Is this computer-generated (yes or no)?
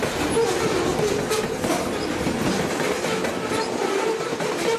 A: no